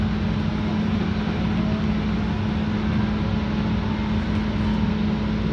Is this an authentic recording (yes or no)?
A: yes